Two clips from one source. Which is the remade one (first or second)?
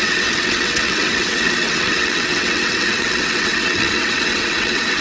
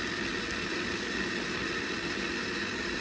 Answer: first